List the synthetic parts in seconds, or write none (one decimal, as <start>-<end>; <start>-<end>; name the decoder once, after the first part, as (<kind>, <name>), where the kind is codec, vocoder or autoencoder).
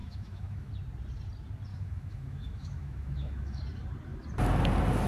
0.0-0.7 (autoencoder, DAC-VAE); 1.7-3.6